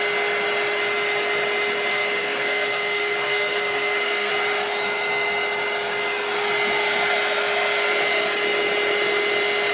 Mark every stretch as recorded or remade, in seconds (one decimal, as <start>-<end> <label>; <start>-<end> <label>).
0.0-1.9 recorded; 1.9-4.3 remade; 4.3-9.7 recorded